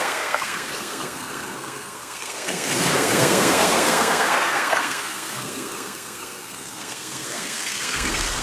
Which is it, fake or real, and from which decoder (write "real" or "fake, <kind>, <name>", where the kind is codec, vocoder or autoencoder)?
fake, codec, SNAC